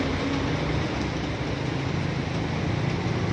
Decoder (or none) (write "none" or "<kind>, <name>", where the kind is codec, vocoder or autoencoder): none